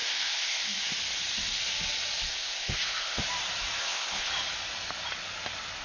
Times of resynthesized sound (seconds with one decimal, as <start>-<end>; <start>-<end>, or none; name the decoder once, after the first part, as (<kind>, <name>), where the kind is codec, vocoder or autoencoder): 0.0-0.8 (codec, ZipCodec); 2.3-3.2; 3.8-4.3